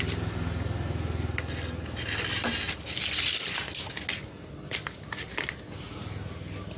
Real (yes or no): yes